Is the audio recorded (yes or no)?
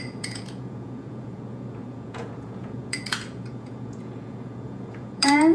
no